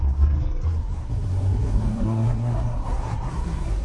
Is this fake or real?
fake